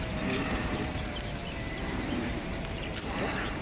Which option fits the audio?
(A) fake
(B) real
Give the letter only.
A